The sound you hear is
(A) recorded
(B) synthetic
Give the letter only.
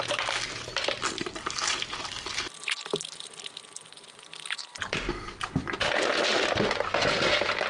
A